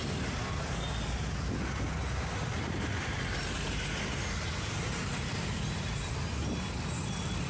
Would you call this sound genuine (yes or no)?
yes